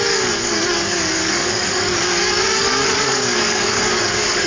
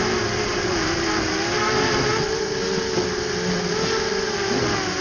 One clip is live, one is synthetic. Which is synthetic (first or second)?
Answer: first